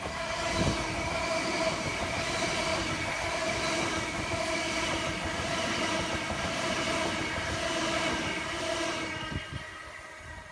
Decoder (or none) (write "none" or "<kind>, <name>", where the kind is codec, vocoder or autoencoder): none